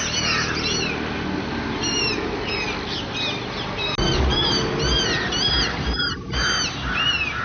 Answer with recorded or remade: recorded